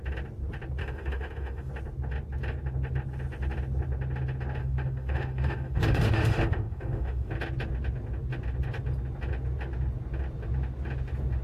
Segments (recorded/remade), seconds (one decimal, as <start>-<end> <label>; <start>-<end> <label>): 0.0-0.8 recorded; 0.8-1.7 remade; 1.7-4.6 recorded; 4.6-7.3 remade; 7.3-11.4 recorded